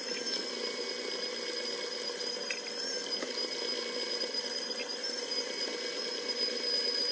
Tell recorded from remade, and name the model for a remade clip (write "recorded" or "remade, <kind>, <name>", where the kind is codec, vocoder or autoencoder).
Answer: recorded